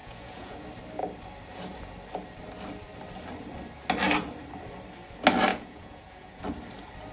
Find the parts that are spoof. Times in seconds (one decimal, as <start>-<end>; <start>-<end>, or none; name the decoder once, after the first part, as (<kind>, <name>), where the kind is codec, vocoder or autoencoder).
0.0-0.6 (vocoder, Vocos); 5.5-6.4